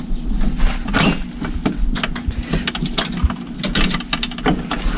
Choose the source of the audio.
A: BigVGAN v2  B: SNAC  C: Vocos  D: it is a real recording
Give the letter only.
D